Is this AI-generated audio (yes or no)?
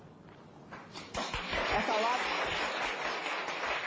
no